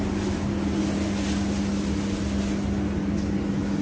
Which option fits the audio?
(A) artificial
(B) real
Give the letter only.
B